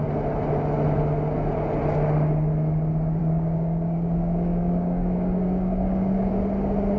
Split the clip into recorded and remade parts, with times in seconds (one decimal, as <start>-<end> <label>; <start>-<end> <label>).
0.0-3.2 recorded; 3.2-6.3 remade; 6.3-7.0 recorded